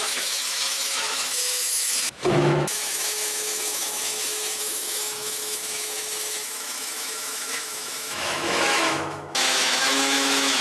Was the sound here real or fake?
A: fake